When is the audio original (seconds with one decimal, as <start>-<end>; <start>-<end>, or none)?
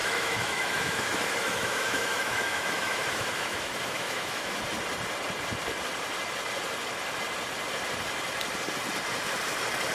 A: 4.6-9.9